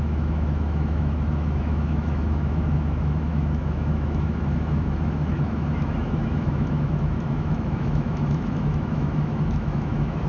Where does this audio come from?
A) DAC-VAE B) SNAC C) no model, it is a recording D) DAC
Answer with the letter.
A